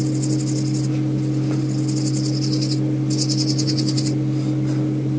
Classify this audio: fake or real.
real